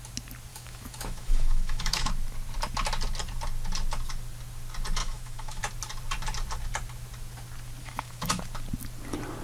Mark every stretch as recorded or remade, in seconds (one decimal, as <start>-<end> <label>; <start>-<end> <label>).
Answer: 0.0-0.5 recorded; 0.5-2.1 remade; 2.1-5.0 recorded; 5.0-5.6 remade; 5.6-7.8 recorded; 7.8-8.4 remade; 8.4-9.4 recorded